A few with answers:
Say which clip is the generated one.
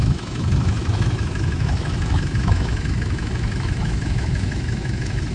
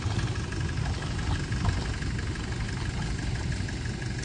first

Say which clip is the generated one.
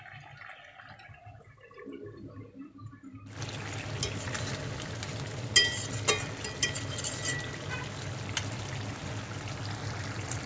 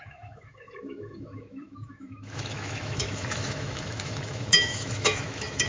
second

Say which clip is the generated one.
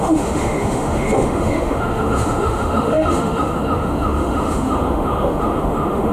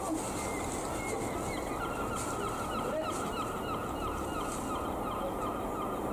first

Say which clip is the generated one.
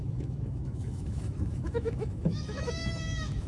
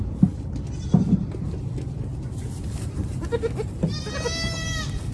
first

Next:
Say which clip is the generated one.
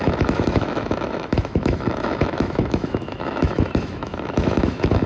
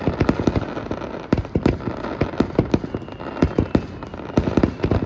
first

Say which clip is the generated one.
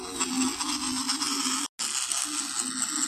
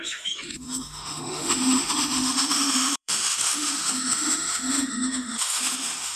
second